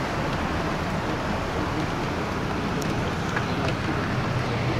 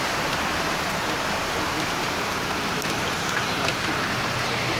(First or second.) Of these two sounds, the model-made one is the second